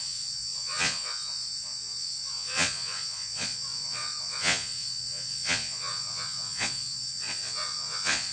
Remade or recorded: remade